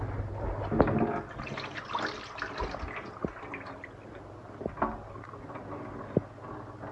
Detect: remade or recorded recorded